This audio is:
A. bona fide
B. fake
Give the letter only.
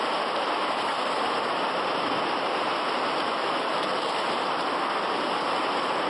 A